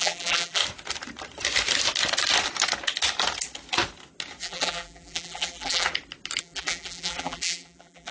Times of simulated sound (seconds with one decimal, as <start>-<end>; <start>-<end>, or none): 0.0-0.6; 4.4-5.9; 6.4-8.1